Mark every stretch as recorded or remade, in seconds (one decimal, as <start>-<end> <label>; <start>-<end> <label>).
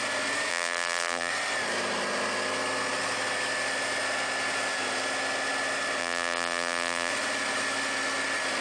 0.0-0.5 recorded; 0.5-1.3 remade; 1.3-6.0 recorded; 6.0-7.1 remade; 7.1-8.6 recorded